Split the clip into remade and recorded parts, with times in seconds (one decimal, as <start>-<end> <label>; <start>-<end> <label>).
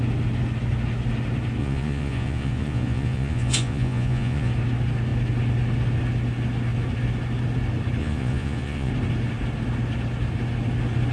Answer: 0.0-1.6 recorded; 1.6-4.5 remade; 4.5-8.0 recorded; 8.0-8.9 remade; 8.9-11.1 recorded